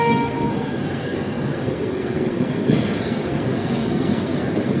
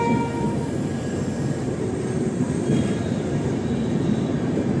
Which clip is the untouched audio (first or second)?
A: second